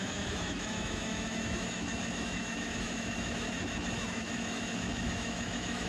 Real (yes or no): no